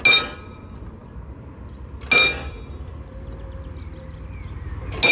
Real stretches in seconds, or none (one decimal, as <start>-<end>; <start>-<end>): 0.0-5.1